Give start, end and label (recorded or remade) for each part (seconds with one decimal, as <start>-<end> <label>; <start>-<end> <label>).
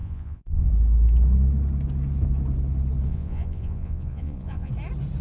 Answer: 0.0-0.7 remade; 0.7-3.1 recorded; 3.1-4.7 remade; 4.7-5.2 recorded